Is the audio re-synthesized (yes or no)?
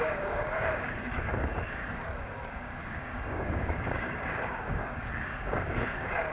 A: yes